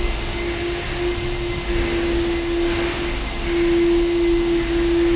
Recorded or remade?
recorded